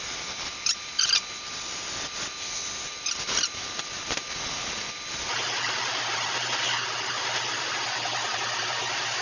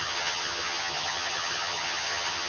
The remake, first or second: second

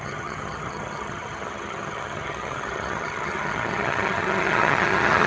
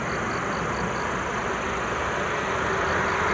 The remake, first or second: first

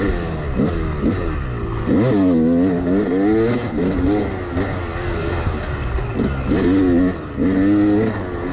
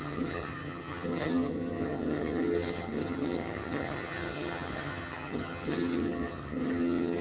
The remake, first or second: second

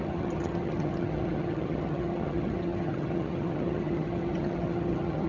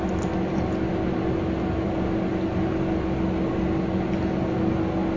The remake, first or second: first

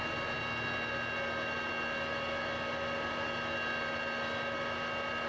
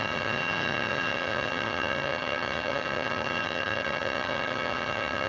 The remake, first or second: second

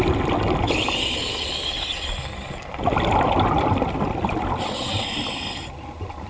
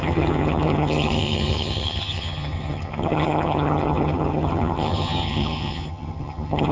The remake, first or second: second